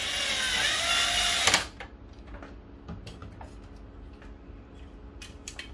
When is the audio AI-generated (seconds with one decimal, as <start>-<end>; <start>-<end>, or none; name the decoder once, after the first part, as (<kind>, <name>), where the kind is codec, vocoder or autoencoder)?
none